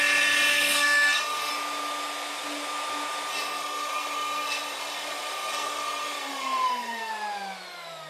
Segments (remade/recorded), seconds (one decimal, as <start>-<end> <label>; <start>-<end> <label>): 0.0-0.5 recorded; 0.5-1.5 remade; 1.5-3.3 recorded; 3.3-7.1 remade; 7.1-8.1 recorded